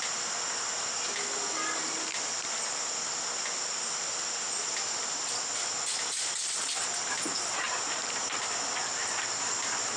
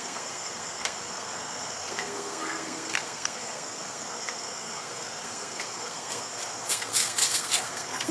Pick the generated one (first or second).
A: second